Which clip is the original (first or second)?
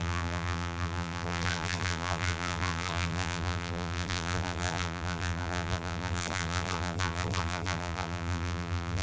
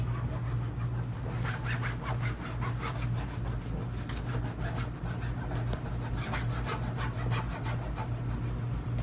second